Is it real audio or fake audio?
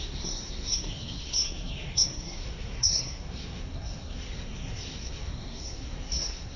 fake